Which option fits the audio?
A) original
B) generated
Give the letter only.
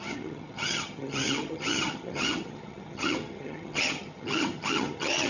B